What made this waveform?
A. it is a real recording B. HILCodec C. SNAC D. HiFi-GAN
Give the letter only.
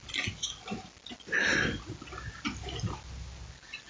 A